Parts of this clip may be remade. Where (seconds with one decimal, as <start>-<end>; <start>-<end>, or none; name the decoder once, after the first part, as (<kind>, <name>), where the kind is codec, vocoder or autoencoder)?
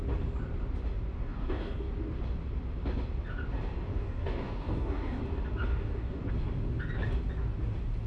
1.2-1.9 (codec, DAC); 3.9-5.2; 5.7-6.3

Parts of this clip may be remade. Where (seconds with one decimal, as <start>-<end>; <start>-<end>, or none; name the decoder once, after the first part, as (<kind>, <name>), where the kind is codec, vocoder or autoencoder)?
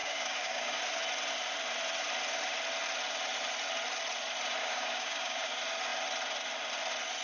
0.0-0.8 (codec, DAC); 4.6-5.5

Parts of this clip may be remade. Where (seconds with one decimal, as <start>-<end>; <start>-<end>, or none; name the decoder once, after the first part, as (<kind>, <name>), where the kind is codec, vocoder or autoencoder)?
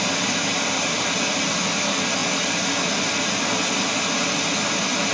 none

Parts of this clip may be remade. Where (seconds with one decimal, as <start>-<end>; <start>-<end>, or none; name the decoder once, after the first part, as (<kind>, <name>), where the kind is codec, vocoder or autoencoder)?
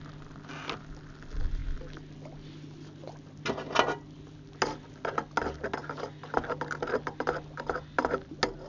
none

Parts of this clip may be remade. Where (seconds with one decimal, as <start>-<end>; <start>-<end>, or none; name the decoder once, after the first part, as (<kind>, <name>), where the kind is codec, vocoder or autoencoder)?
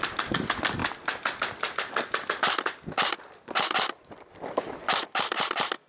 none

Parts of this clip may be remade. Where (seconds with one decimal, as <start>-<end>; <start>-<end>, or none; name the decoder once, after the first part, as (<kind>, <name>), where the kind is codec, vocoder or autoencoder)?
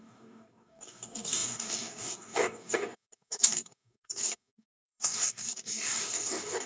0.0-6.7 (codec, DAC)